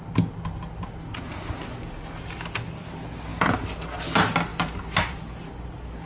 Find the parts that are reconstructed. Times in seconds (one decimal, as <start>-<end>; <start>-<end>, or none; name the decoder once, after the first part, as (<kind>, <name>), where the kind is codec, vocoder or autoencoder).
4.5-5.5 (vocoder, BigVGAN v2)